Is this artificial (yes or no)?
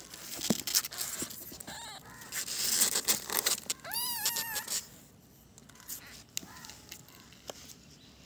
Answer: no